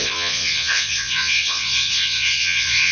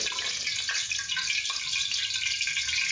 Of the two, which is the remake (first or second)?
first